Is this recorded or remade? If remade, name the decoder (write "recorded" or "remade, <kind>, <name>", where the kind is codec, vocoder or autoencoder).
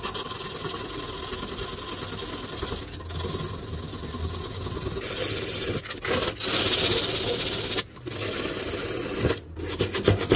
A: recorded